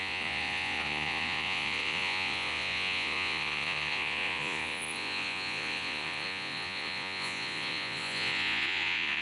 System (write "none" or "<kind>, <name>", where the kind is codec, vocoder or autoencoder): vocoder, Vocos